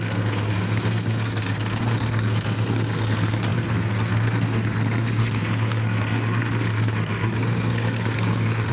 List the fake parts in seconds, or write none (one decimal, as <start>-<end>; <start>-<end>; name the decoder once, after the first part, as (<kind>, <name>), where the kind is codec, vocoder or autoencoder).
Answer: 0.0-8.7 (codec, SNAC)